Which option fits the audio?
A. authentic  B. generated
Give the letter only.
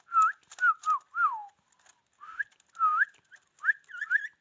A